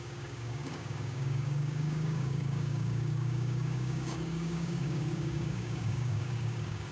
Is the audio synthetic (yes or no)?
yes